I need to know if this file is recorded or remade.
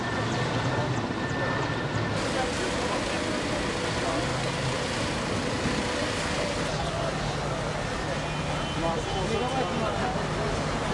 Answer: recorded